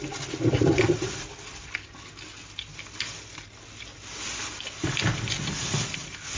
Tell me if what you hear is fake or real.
real